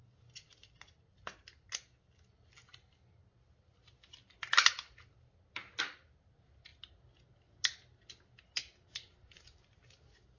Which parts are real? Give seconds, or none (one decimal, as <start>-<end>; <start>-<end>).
0.0-10.4